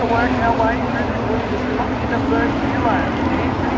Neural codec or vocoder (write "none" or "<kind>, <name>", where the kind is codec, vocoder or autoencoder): none